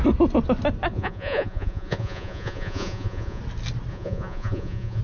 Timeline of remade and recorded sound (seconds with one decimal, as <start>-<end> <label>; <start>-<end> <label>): 0.0-0.9 recorded; 0.9-3.4 remade; 3.4-3.9 recorded; 3.9-5.0 remade